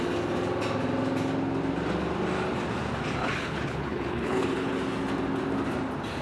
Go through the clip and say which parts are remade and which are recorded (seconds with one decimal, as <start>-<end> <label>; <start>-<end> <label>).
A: 0.0-3.2 recorded; 3.2-4.7 remade; 4.7-6.2 recorded